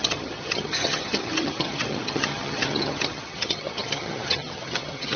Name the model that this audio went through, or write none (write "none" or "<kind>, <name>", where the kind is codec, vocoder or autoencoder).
vocoder, HiFi-GAN